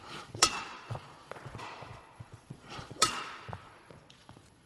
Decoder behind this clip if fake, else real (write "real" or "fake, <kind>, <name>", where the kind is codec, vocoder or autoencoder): fake, vocoder, Vocos